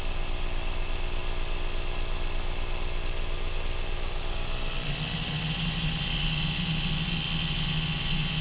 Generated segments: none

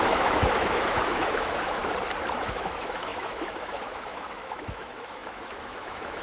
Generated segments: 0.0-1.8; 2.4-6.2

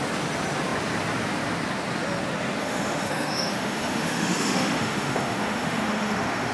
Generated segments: 2.6-6.5